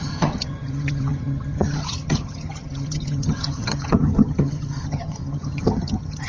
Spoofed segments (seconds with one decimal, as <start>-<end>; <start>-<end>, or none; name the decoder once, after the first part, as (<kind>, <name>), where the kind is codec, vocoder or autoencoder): 0.0-6.3 (vocoder, HiFi-GAN)